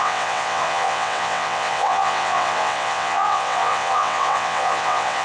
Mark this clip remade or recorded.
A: remade